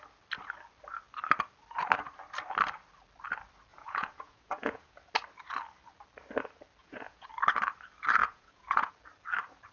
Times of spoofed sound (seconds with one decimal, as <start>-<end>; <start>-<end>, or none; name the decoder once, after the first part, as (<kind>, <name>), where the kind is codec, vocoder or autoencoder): 3.7-5.0 (vocoder, Vocos); 6.8-7.3; 8.2-8.9